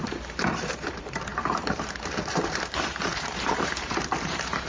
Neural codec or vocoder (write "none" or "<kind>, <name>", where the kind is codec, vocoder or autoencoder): vocoder, BigVGAN v2